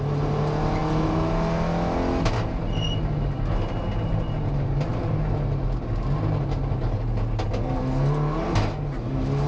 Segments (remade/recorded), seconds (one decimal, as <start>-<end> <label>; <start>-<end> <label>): 0.0-9.5 recorded